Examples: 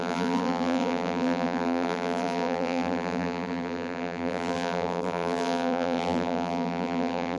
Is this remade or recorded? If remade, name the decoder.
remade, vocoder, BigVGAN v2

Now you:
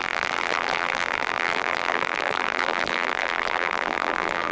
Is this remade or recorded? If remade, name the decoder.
remade, vocoder, BigVGAN v2